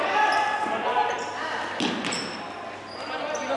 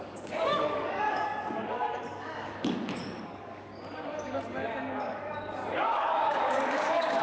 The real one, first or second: first